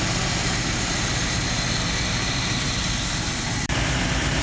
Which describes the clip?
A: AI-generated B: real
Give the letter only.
A